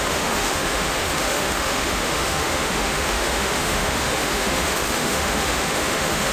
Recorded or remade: remade